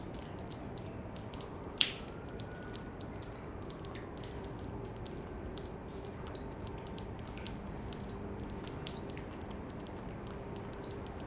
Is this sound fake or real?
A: fake